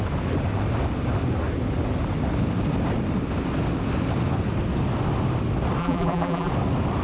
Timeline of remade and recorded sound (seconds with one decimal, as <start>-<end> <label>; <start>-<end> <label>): 0.0-5.8 recorded; 5.8-6.5 remade; 6.5-7.0 recorded